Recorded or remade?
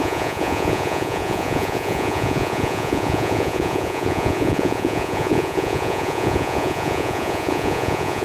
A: remade